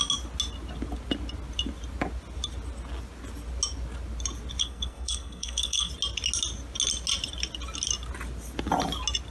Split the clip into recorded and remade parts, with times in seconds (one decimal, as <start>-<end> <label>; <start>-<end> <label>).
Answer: 0.0-4.6 recorded; 4.6-5.9 remade; 5.9-9.3 recorded